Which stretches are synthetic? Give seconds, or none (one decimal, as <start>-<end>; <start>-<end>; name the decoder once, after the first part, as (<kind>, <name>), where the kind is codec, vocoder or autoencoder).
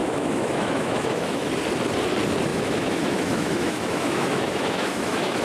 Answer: 0.0-1.5 (autoencoder, DAC-VAE); 2.5-5.4